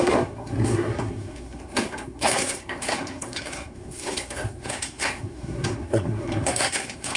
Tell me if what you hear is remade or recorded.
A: remade